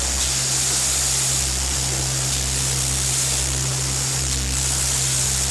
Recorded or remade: recorded